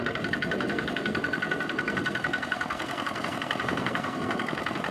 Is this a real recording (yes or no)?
no